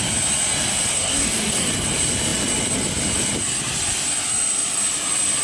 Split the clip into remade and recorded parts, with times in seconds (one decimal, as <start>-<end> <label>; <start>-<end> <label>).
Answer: 0.0-0.9 recorded; 0.9-1.7 remade; 1.7-5.4 recorded